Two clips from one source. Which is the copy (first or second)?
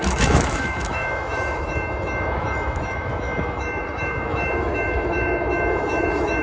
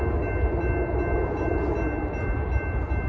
first